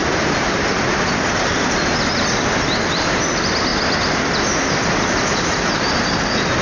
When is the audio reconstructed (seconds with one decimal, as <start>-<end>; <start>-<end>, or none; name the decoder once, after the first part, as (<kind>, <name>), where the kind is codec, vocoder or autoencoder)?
0.0-2.0 (vocoder, BigVGAN v2)